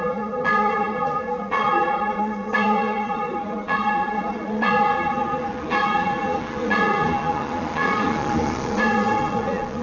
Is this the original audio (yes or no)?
no